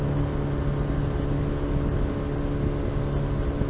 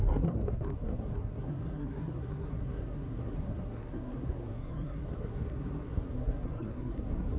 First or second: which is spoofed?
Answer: second